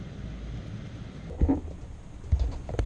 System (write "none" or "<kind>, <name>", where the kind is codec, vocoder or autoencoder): none